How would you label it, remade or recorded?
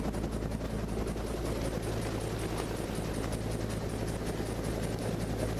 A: recorded